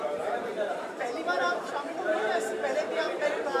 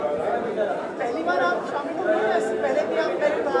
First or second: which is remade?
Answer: first